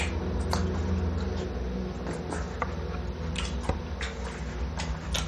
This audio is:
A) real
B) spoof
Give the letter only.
A